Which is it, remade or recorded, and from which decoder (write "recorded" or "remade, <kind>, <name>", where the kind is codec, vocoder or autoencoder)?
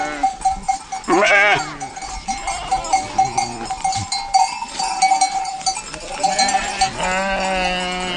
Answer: recorded